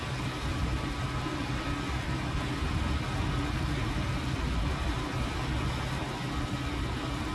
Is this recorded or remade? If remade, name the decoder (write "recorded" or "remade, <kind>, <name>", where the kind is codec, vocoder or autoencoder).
recorded